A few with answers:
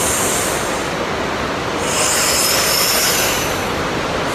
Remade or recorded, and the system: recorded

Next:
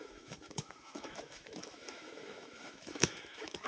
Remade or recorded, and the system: remade, autoencoder, DAC-VAE